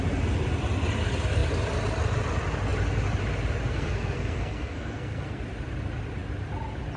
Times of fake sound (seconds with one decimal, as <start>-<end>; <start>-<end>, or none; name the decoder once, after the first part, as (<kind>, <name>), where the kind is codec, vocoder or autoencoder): 3.7-5.4 (codec, SNAC)